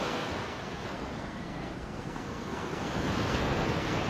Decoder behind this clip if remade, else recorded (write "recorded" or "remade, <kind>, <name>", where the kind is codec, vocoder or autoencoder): remade, codec, SNAC